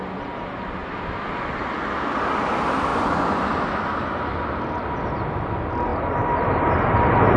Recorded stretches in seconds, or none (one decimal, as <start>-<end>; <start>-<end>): 0.0-2.9; 3.4-7.4